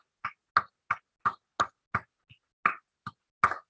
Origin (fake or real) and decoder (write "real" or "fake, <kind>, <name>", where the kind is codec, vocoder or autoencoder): real